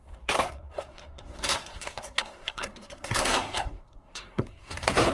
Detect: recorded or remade remade